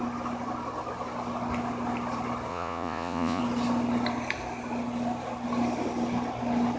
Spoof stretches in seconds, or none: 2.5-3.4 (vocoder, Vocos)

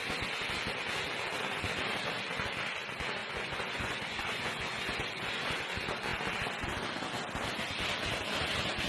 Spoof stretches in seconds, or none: 3.2-5.6 (vocoder, Vocos)

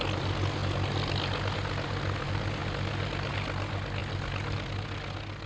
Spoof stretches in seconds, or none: none

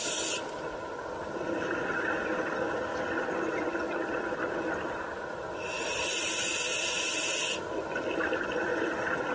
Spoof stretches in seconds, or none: none

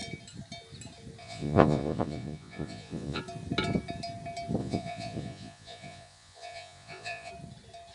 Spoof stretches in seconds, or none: 1.2-3.2 (vocoder, Vocos); 4.6-7.3

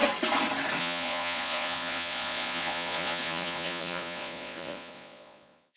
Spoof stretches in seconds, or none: 0.8-5.8 (vocoder, Vocos)